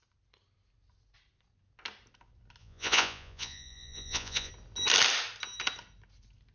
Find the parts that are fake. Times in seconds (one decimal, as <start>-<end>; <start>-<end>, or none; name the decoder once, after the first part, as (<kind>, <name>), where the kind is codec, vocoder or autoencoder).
2.6-4.5 (vocoder, Vocos)